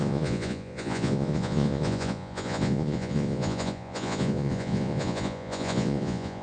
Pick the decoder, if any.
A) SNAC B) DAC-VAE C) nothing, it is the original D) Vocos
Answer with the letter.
D